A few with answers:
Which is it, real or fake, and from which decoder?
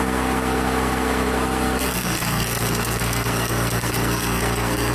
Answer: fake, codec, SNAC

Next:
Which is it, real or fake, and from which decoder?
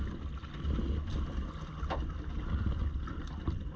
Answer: real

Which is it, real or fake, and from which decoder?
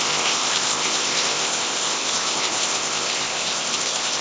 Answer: fake, codec, ZipCodec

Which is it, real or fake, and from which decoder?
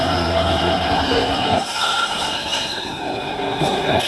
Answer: fake, codec, SNAC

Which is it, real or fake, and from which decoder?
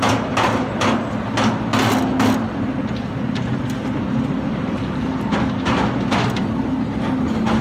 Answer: real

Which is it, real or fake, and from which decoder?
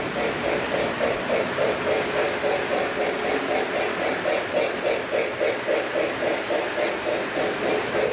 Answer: real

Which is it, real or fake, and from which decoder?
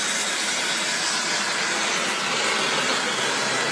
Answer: real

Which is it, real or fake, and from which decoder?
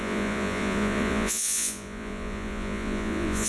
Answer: fake, vocoder, Vocos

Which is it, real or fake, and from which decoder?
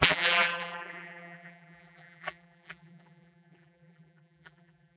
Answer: fake, vocoder, BigVGAN v2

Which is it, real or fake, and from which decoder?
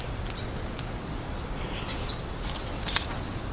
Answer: real